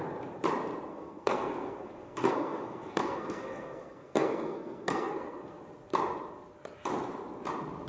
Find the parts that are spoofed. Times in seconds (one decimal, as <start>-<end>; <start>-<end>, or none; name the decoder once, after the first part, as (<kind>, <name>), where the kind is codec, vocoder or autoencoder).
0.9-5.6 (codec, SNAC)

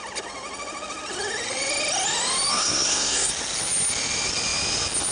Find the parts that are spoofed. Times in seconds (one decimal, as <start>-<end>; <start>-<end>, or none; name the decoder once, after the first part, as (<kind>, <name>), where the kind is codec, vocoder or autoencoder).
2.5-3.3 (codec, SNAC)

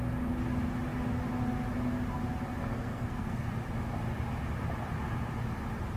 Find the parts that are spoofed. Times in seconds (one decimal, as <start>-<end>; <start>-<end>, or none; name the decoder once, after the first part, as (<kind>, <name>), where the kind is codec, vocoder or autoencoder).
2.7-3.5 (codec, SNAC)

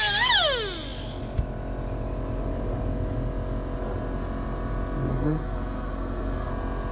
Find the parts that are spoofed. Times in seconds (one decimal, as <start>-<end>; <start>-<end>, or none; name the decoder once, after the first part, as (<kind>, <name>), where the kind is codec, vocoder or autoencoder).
5.1-6.5 (codec, SNAC)

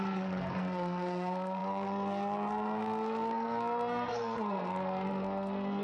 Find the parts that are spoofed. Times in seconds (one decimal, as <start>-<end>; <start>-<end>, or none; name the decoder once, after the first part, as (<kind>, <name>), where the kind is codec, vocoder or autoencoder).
0.0-5.8 (codec, SNAC)

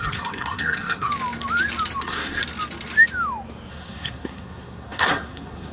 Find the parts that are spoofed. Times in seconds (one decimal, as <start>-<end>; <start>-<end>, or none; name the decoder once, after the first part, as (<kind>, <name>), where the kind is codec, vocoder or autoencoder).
0.0-1.1 (codec, SNAC); 2.0-2.4; 3.7-5.7

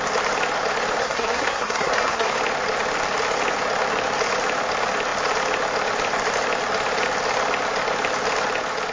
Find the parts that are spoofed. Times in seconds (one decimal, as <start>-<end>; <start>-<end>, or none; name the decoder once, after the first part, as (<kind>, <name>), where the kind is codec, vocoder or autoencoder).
1.0-2.3 (codec, SNAC)